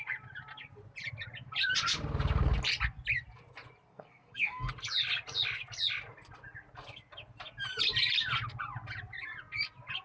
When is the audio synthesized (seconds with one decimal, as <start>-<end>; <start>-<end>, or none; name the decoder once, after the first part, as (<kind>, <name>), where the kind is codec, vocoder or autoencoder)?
3.9-4.7 (codec, SNAC)